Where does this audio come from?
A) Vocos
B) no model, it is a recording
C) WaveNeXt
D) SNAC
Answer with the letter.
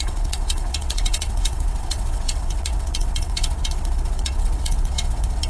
C